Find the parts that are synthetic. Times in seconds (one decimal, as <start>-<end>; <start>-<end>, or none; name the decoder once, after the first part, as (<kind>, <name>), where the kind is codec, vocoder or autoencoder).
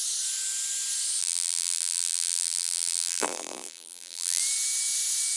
1.2-4.4 (vocoder, BigVGAN v2)